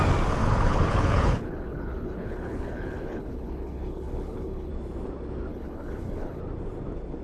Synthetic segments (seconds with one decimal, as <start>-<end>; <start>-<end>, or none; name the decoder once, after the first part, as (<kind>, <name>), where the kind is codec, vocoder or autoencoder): 0.4-4.7 (codec, HILCodec); 5.5-6.4